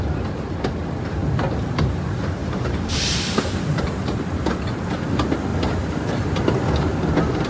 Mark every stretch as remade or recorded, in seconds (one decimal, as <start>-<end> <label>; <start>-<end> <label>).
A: 0.0-2.4 recorded; 2.4-4.2 remade; 4.2-7.5 recorded